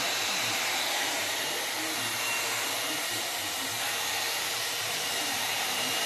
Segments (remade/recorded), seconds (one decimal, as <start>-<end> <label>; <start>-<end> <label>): 0.0-1.2 remade; 1.2-2.1 recorded; 2.1-3.7 remade; 3.7-4.3 recorded; 4.3-6.1 remade